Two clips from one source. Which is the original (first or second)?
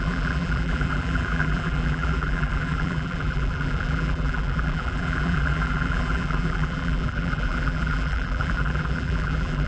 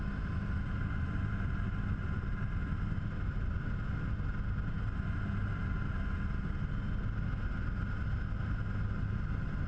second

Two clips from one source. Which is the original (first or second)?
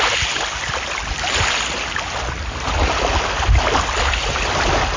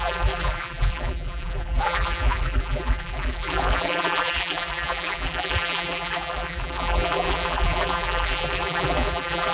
first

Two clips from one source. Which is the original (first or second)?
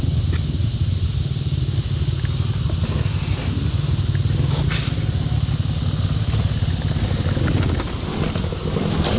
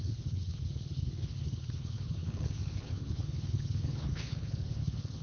first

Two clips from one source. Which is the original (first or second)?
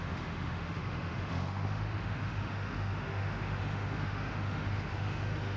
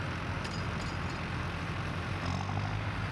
second